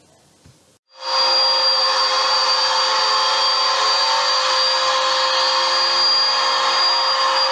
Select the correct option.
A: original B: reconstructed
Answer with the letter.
A